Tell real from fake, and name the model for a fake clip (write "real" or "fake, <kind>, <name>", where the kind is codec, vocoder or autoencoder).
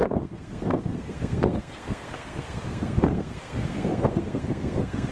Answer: fake, codec, SNAC